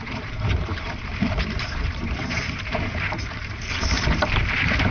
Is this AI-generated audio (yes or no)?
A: yes